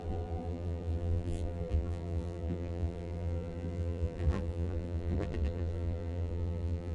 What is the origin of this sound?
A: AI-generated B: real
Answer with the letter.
A